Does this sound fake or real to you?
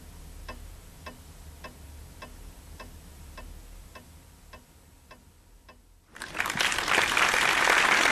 real